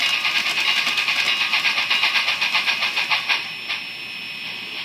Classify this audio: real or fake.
real